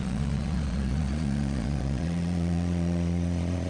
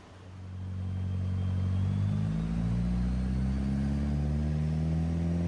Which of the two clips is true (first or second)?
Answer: second